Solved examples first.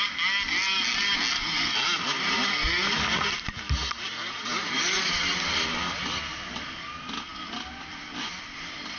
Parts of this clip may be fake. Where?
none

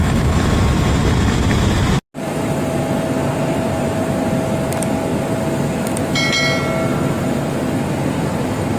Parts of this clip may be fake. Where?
none

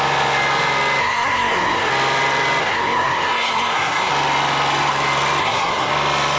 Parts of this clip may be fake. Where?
1.0-1.9 (codec, SNAC); 2.6-4.1; 5.4-5.9

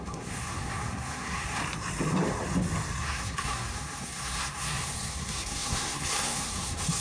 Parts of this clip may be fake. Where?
0.0-1.6 (codec, SNAC); 3.0-7.0